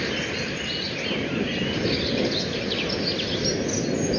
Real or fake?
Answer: real